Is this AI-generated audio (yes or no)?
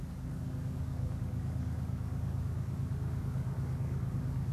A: yes